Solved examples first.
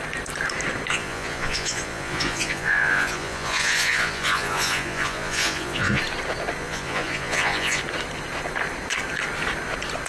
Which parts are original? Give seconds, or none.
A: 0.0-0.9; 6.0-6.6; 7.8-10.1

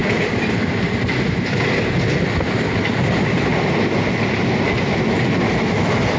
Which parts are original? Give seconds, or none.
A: 0.0-6.2